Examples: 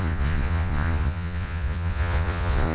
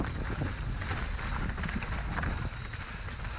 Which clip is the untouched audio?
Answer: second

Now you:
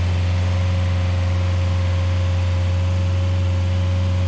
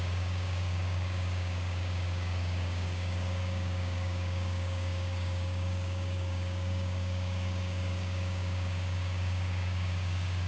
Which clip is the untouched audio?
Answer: first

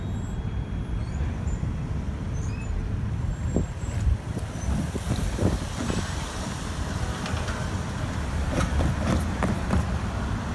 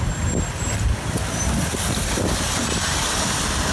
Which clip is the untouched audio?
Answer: second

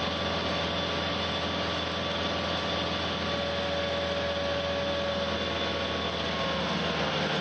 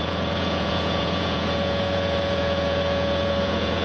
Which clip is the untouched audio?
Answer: first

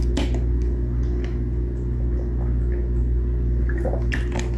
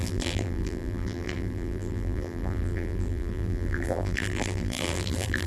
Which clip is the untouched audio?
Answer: first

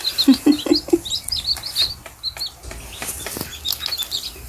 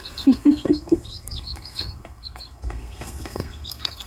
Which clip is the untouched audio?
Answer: first